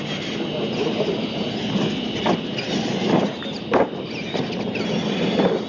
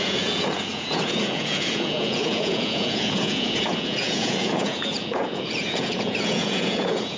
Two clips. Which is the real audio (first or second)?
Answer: first